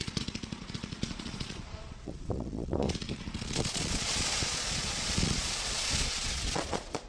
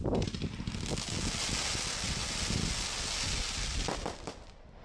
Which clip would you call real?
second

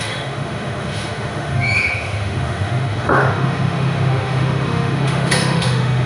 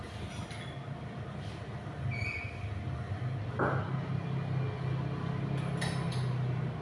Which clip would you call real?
second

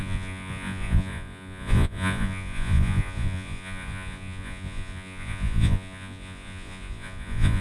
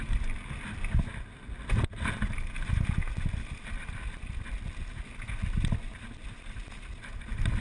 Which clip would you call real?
second